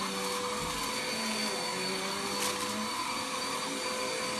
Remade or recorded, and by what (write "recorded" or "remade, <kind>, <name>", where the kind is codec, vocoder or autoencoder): recorded